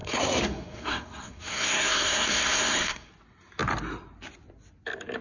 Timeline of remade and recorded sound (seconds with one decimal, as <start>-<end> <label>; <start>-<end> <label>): 0.0-3.1 remade; 3.1-5.2 recorded